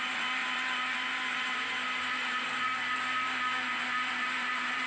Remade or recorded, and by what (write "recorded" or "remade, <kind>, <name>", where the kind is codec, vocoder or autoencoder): remade, vocoder, BigVGAN v2